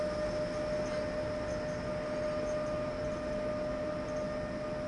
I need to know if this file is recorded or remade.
recorded